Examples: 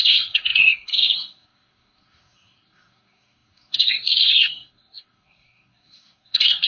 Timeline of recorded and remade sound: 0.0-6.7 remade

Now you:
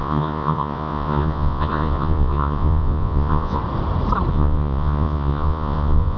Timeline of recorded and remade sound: 0.0-3.6 remade; 3.6-4.3 recorded; 4.3-6.2 remade